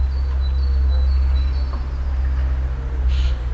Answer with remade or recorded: recorded